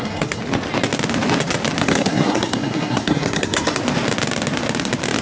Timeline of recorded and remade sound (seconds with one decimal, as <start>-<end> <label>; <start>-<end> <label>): 0.0-0.4 remade; 0.4-1.8 recorded; 1.8-3.8 remade; 3.8-5.2 recorded